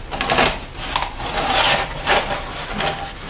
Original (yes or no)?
yes